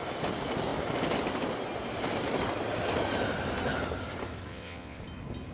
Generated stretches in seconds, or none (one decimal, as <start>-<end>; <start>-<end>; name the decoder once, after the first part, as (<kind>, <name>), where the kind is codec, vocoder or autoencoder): 4.5-5.0 (vocoder, WaveNeXt)